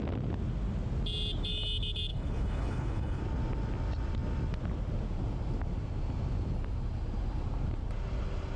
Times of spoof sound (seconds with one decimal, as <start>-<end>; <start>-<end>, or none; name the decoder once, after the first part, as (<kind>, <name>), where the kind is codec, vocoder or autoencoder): 2.1-3.2 (codec, HILCodec)